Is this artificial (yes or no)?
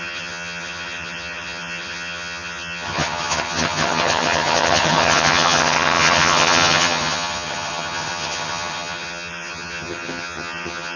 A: yes